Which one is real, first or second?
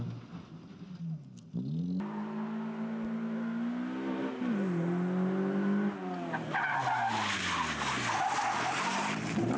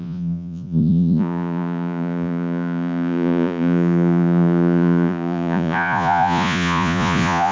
first